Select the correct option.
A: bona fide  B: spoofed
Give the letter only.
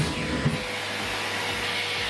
A